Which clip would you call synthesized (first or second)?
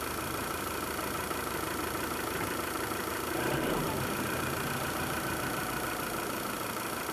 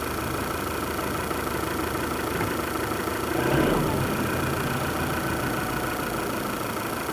first